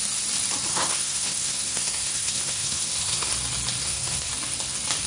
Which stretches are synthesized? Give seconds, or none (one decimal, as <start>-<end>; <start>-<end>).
0.7-3.3; 3.8-4.3